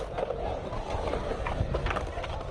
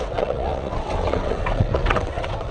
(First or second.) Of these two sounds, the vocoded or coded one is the second